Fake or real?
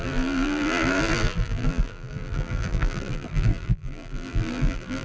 fake